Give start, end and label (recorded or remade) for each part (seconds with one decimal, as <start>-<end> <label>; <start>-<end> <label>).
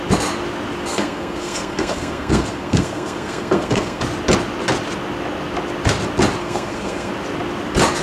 0.0-0.9 recorded; 0.9-4.0 remade; 4.0-6.4 recorded; 6.4-7.1 remade; 7.1-8.0 recorded